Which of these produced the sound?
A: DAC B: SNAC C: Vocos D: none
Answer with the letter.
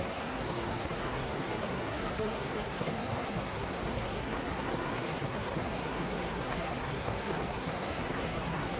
B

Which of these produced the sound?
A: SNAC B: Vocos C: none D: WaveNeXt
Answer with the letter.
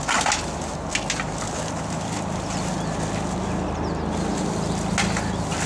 C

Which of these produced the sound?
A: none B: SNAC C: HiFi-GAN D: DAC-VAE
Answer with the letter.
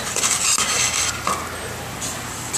A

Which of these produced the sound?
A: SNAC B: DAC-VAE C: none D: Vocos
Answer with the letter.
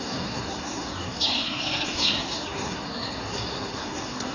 A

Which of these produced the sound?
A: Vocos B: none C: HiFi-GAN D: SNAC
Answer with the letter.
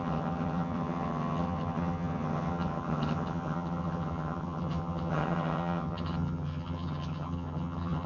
C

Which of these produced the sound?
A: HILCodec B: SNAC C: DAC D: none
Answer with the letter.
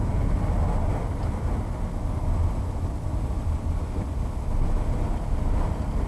D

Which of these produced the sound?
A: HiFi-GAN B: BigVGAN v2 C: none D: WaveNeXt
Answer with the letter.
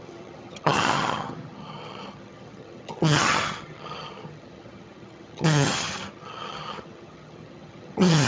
A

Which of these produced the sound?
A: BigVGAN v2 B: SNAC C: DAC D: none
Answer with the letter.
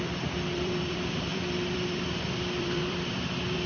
A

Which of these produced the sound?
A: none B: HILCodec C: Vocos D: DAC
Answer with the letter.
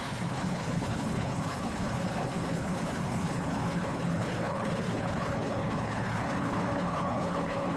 B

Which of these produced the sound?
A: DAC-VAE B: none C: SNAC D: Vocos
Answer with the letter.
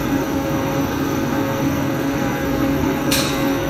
C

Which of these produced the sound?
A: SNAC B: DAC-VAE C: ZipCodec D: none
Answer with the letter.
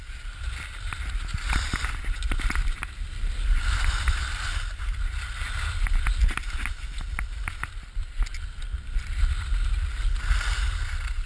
D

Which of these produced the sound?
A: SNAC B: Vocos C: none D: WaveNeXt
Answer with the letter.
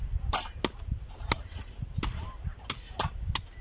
C